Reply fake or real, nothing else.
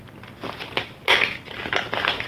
real